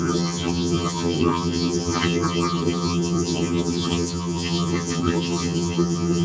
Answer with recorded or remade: remade